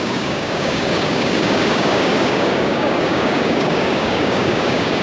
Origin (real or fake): fake